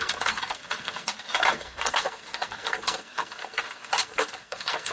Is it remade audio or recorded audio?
remade